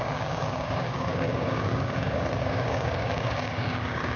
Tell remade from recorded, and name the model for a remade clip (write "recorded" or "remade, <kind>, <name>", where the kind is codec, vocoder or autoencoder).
remade, codec, DAC